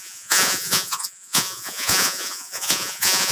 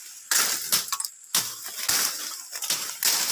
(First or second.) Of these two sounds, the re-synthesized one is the first